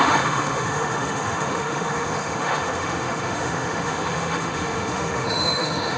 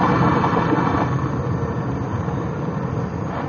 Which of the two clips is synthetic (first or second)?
first